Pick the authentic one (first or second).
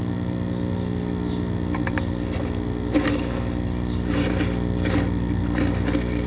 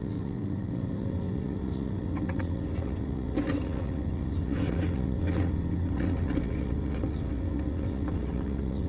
first